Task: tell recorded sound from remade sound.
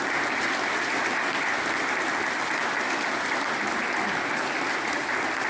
recorded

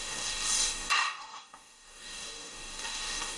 remade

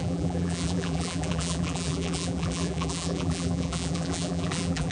remade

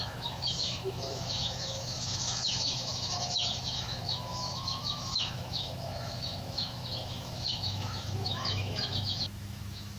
remade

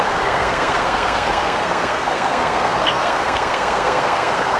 remade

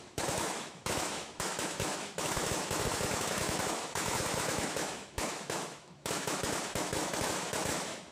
remade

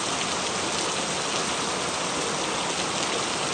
recorded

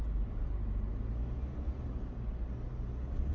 recorded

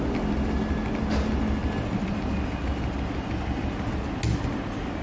recorded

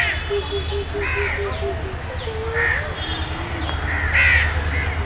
recorded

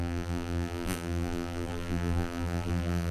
remade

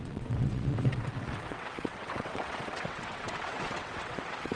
remade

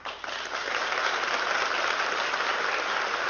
recorded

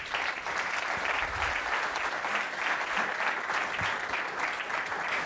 recorded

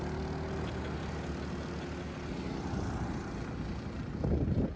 recorded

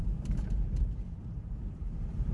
remade